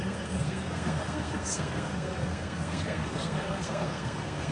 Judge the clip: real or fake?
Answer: fake